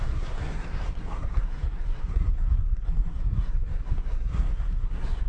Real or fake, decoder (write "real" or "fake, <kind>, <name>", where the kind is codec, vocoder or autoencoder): fake, codec, SNAC